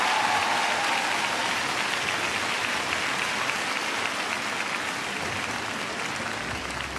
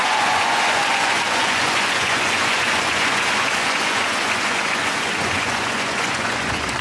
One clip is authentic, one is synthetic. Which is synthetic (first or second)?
second